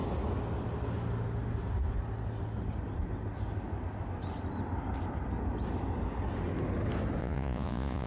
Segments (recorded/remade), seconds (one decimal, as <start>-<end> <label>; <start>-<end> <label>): 0.0-7.2 recorded; 7.2-8.1 remade